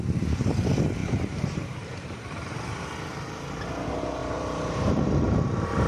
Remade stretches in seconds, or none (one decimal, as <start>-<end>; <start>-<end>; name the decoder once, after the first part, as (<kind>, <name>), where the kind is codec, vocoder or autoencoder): 1.0-2.9 (vocoder, BigVGAN v2); 4.2-5.9